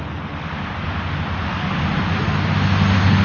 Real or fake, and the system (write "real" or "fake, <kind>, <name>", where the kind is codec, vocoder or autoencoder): real